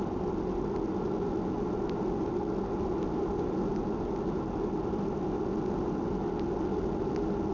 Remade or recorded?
recorded